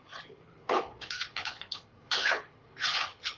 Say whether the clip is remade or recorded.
remade